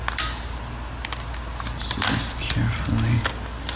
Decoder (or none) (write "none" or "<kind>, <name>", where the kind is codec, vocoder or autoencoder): none